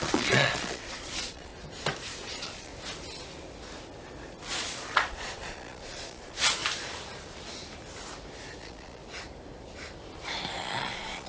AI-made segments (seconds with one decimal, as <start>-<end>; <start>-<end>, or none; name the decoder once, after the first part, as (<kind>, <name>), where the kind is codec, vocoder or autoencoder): 0.0-1.5 (vocoder, Vocos); 2.3-2.7; 4.5-6.6; 8.6-9.0; 10.6-11.3